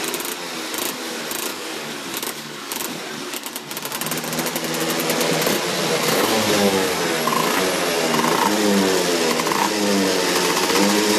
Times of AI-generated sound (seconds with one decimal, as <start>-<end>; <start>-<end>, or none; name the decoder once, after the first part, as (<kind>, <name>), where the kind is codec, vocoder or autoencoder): 1.5-2.8 (codec, DAC); 6.3-7.0